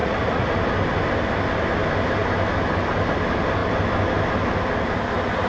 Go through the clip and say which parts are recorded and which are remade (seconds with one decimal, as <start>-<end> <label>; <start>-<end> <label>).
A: 0.0-0.5 remade; 0.5-5.5 recorded